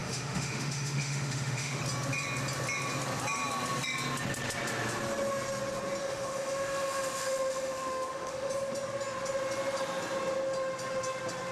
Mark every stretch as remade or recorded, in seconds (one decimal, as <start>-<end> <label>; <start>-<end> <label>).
0.0-1.8 remade; 1.8-6.0 recorded; 6.0-8.5 remade; 8.5-11.5 recorded